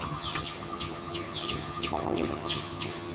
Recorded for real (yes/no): no